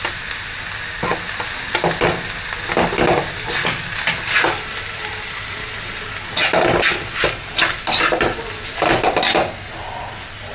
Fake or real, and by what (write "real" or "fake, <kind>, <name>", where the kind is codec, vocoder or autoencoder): real